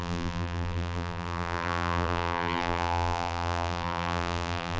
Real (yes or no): no